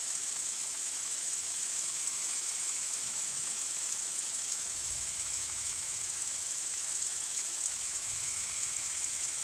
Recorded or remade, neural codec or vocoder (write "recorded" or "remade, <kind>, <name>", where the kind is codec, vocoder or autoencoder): remade, autoencoder, DAC-VAE